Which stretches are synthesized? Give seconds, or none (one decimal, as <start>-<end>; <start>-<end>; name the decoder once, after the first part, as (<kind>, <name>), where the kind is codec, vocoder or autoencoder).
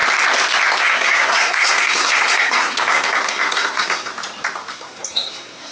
0.8-4.1 (codec, SNAC); 4.7-5.7